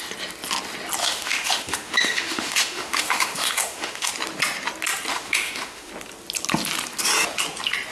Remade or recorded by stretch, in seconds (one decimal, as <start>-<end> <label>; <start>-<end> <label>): 0.0-1.0 recorded; 1.0-4.1 remade; 4.1-5.1 recorded; 5.1-5.9 remade; 5.9-7.9 recorded